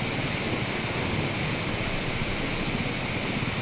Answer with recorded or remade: recorded